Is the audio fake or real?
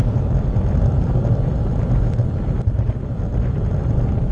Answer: real